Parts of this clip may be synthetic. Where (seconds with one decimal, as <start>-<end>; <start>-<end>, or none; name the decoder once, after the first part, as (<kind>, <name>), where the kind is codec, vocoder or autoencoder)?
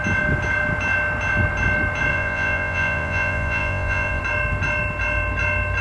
2.1-4.2 (vocoder, Vocos)